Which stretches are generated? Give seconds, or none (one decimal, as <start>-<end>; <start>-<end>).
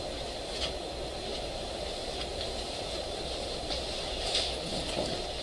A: 1.3-1.9; 2.3-3.2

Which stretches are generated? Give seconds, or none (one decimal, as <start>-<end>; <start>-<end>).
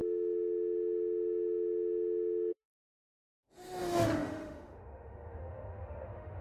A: 0.0-6.4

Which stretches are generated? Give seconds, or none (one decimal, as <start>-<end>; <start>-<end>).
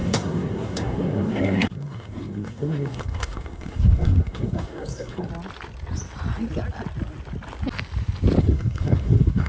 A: 0.0-5.3; 8.4-9.5